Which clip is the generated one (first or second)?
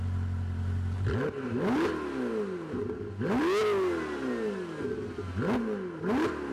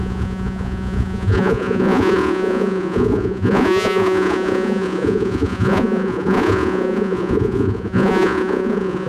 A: second